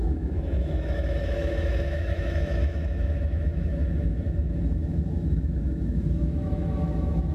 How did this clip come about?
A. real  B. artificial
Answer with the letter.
B